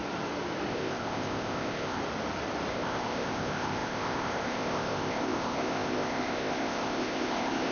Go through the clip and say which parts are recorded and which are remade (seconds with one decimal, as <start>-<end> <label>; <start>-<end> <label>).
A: 0.0-0.7 recorded; 0.7-2.0 remade; 2.0-2.7 recorded; 2.7-7.7 remade